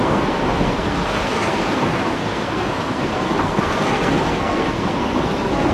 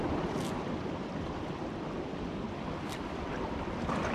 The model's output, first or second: first